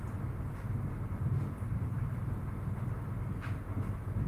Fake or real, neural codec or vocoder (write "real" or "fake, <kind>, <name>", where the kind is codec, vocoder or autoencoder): real